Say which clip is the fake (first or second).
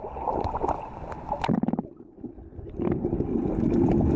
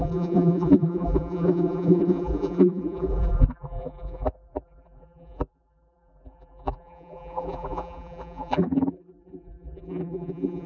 second